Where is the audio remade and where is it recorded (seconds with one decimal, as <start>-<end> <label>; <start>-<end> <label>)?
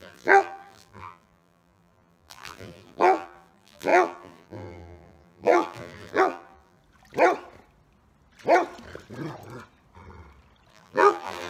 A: 0.0-6.8 remade; 6.8-10.7 recorded; 10.7-11.5 remade